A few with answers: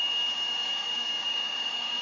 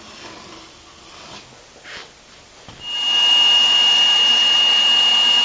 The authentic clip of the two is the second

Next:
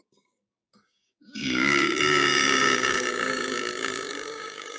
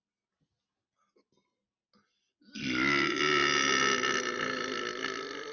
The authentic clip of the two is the second